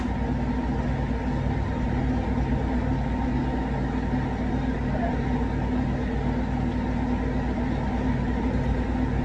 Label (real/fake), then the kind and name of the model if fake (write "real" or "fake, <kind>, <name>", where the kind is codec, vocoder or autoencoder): real